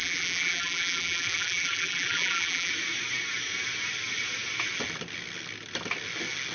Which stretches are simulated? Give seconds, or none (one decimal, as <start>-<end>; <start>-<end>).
0.0-2.7